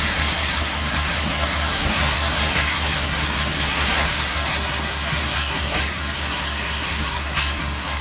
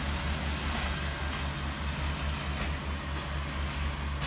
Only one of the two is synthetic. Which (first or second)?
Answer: first